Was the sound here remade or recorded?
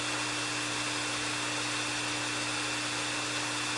recorded